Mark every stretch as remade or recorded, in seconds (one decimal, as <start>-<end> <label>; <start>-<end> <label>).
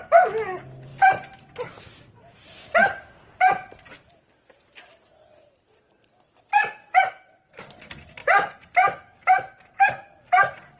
0.0-8.2 recorded; 8.2-8.7 remade; 8.7-10.8 recorded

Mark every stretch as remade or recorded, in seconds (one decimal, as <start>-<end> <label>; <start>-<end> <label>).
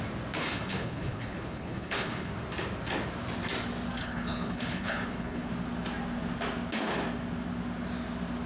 0.0-0.4 recorded; 0.4-2.3 remade; 2.3-4.0 recorded; 4.0-5.5 remade; 5.5-8.5 recorded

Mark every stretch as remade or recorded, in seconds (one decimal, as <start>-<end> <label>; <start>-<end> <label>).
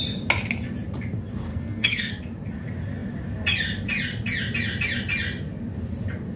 0.0-1.5 recorded; 1.5-2.1 remade; 2.1-6.4 recorded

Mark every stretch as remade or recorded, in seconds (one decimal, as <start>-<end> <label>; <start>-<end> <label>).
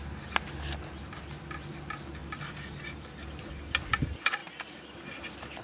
0.0-2.2 recorded; 2.2-3.5 remade; 3.5-5.6 recorded